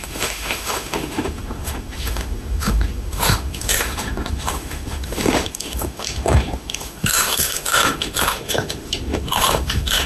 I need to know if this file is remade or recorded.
remade